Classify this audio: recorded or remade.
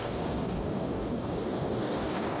remade